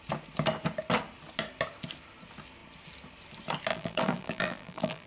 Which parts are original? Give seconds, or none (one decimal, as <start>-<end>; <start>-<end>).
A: 0.0-3.7